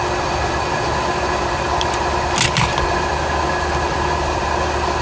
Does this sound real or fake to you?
real